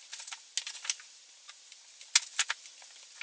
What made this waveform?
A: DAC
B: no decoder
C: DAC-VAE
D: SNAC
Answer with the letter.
B